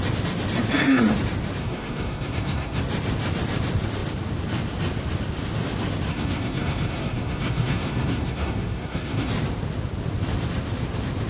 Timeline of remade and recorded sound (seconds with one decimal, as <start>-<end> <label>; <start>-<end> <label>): 0.0-1.6 recorded; 1.6-2.8 remade; 2.8-6.1 recorded; 6.1-9.3 remade; 9.3-11.3 recorded